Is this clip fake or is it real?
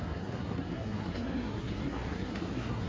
fake